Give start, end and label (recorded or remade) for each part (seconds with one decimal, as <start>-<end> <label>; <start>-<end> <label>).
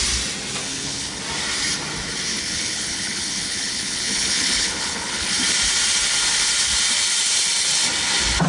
0.0-0.6 recorded; 0.6-1.2 remade; 1.2-2.3 recorded; 2.3-5.3 remade; 5.3-8.5 recorded